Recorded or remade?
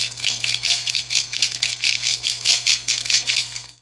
remade